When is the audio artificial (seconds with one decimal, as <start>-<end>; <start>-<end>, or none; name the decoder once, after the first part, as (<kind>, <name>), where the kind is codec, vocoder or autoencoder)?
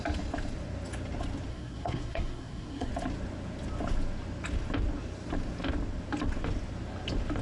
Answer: 1.5-2.9 (codec, SNAC)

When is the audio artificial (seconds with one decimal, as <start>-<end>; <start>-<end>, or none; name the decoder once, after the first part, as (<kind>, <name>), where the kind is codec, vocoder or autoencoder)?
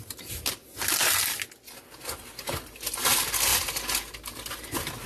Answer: none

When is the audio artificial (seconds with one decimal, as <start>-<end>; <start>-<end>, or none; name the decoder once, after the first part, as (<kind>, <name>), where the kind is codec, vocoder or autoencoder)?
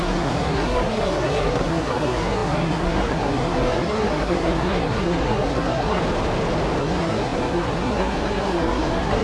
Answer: 0.0-6.0 (codec, SNAC); 6.8-9.2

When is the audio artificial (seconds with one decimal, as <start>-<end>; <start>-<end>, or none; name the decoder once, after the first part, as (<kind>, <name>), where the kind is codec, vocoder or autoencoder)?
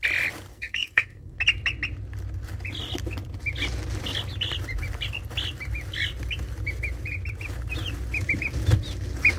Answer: 0.5-1.4 (codec, SNAC)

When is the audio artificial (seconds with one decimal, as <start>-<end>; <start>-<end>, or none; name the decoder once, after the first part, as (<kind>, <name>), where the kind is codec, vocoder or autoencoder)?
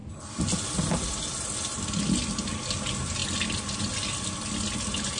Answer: none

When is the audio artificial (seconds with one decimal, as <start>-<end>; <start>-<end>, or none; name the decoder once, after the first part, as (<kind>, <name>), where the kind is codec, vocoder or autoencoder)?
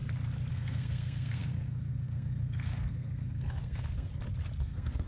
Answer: 0.5-4.1 (codec, SNAC); 4.6-5.1